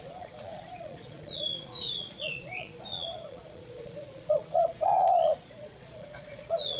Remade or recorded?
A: remade